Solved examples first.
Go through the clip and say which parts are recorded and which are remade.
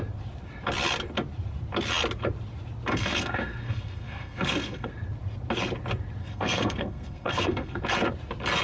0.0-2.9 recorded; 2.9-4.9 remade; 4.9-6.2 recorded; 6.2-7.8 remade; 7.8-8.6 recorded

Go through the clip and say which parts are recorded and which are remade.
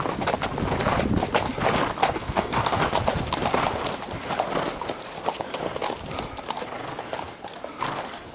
0.0-2.0 recorded; 2.0-2.8 remade; 2.8-8.3 recorded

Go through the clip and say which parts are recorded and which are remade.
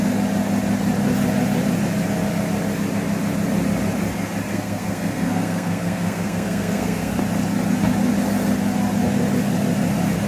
0.0-4.5 recorded; 4.5-7.1 remade; 7.1-10.3 recorded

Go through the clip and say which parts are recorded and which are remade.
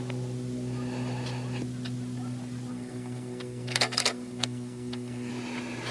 0.0-2.7 recorded; 2.7-5.3 remade; 5.3-5.9 recorded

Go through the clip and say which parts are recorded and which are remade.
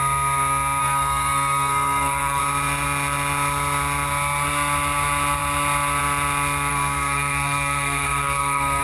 0.0-0.8 recorded; 0.8-2.4 remade; 2.4-6.7 recorded; 6.7-8.8 remade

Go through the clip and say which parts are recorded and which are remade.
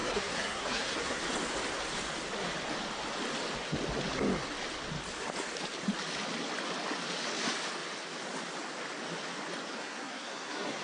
0.0-1.2 remade; 1.2-9.8 recorded; 9.8-10.8 remade